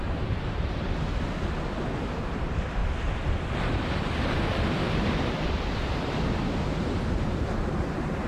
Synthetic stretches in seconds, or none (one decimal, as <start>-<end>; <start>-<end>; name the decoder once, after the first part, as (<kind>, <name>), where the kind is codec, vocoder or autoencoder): 0.0-1.1 (vocoder, BigVGAN v2); 2.2-2.8; 6.8-8.3